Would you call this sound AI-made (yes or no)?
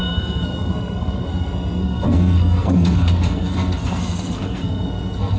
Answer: yes